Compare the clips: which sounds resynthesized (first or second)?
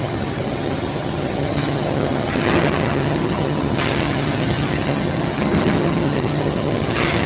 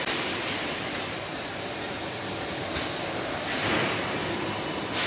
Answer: first